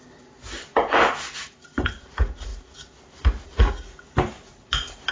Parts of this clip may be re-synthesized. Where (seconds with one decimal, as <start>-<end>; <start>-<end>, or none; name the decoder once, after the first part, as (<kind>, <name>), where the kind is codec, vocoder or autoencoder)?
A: none